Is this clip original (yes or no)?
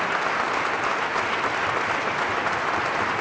yes